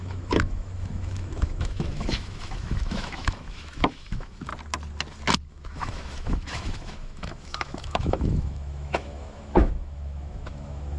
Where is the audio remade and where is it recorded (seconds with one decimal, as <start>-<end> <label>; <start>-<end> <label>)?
0.0-4.5 remade; 4.5-5.5 recorded; 5.5-11.0 remade